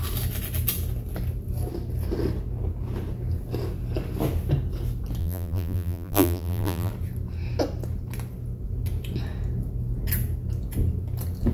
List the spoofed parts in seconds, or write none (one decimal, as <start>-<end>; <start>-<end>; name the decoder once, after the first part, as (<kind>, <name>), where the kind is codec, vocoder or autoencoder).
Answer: 5.2-6.9 (vocoder, BigVGAN v2)